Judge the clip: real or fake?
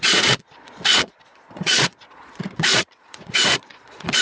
fake